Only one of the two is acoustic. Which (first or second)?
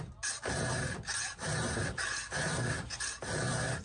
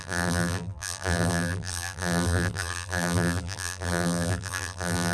first